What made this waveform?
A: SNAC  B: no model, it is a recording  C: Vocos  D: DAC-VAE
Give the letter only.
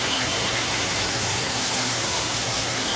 A